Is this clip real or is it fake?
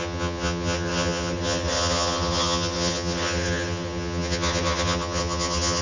fake